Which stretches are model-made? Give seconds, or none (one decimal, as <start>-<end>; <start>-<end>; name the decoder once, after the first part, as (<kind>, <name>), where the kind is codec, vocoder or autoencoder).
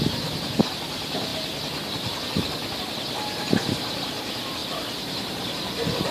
none